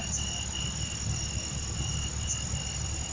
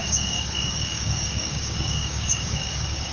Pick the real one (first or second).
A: first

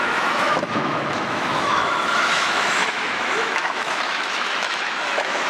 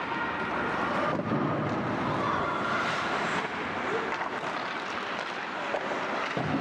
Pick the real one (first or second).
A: second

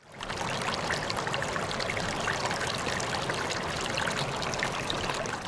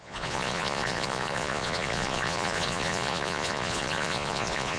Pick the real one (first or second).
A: first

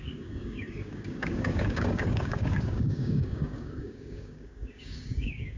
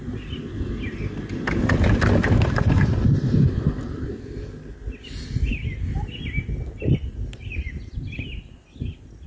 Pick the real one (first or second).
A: second